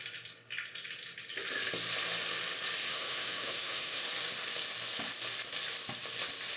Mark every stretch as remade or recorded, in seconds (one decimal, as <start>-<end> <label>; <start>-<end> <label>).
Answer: 0.0-2.8 recorded; 2.8-4.0 remade; 4.0-6.6 recorded